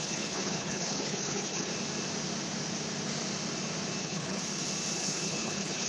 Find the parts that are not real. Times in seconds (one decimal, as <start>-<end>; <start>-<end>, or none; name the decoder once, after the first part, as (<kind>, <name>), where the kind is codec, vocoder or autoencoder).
0.0-1.7 (codec, HILCodec); 4.0-4.4; 5.0-5.9